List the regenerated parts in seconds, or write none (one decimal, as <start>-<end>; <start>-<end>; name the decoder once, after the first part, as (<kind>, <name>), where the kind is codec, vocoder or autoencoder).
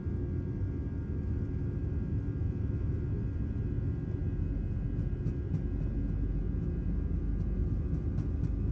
none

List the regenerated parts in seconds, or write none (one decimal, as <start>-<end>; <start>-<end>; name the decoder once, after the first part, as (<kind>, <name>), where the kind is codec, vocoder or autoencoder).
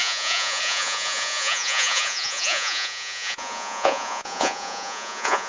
0.0-5.5 (vocoder, Vocos)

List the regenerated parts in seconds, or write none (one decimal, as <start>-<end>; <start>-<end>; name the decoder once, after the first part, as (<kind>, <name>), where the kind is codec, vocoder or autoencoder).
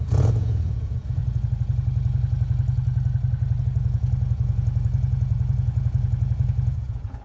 0.0-1.2 (vocoder, Vocos); 3.6-7.2